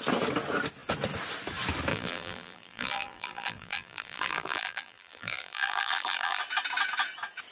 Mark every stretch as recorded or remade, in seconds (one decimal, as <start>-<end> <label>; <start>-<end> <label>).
0.0-1.9 recorded; 1.9-6.4 remade; 6.4-7.5 recorded